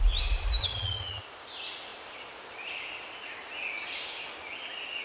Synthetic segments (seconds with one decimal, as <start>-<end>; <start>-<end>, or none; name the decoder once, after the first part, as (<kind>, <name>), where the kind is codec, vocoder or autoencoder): 0.6-1.2 (vocoder, HiFi-GAN)